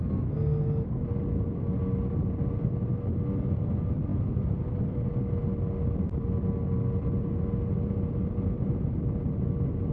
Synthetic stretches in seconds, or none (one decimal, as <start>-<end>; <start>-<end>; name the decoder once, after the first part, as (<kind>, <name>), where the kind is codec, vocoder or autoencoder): none